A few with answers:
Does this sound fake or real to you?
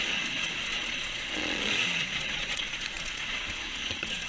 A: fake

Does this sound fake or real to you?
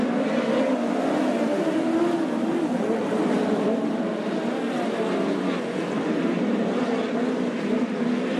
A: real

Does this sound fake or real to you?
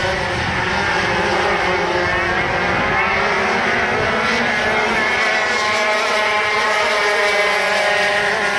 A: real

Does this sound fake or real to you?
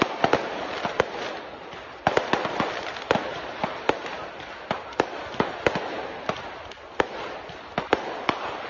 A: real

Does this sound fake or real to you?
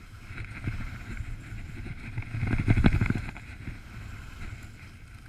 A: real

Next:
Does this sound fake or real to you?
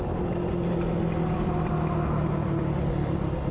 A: real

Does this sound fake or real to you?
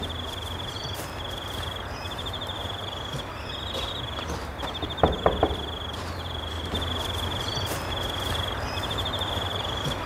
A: fake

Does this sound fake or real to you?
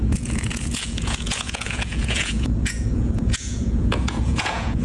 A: fake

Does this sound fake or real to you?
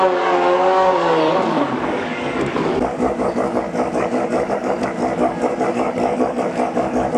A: fake